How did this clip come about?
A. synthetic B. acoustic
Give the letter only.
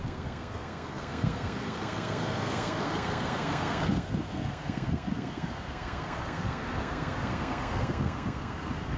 A